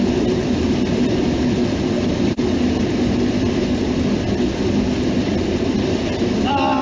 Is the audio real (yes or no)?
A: yes